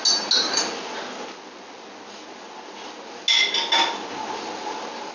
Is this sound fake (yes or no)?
no